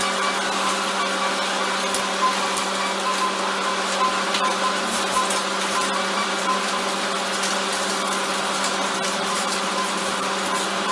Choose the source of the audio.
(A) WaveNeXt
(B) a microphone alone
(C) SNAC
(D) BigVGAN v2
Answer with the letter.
B